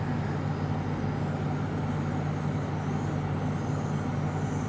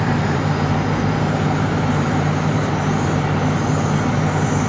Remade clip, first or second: second